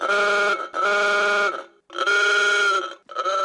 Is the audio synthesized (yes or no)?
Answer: no